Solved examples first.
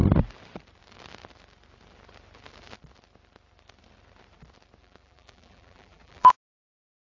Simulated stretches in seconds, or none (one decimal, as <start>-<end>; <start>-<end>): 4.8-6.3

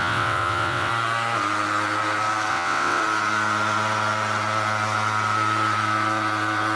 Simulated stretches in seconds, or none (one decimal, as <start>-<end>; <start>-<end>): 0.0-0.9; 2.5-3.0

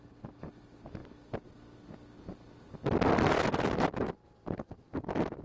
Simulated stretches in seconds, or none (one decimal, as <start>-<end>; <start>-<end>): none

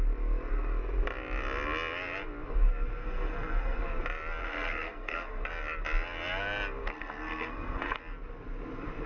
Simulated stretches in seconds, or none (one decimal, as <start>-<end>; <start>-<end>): 3.0-3.8; 4.4-5.4; 6.8-8.0